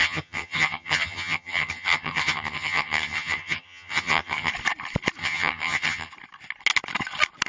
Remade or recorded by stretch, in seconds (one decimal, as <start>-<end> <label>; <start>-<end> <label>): 0.0-4.5 remade; 4.5-5.2 recorded; 5.2-6.1 remade; 6.1-7.5 recorded